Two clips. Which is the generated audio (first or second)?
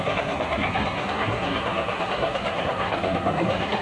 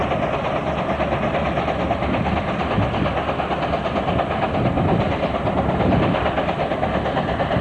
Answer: first